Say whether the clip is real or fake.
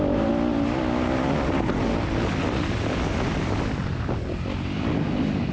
real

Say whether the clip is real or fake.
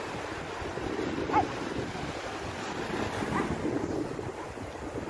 real